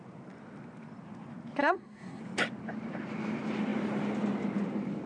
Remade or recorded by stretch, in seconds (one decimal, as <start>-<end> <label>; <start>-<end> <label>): 0.0-1.6 recorded; 1.6-2.2 remade; 2.2-5.1 recorded